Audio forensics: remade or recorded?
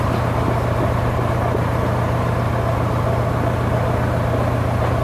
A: recorded